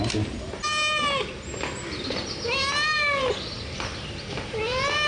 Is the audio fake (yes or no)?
no